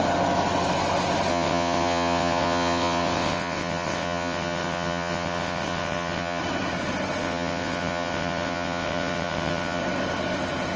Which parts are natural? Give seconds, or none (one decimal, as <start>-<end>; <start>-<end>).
0.0-1.3; 6.4-7.2; 9.8-10.8